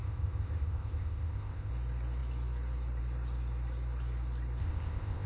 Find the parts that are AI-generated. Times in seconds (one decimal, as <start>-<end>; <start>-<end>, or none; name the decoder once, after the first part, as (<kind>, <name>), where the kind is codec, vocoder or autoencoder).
0.0-1.7 (codec, ZipCodec); 4.6-5.3